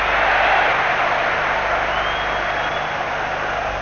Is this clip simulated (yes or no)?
no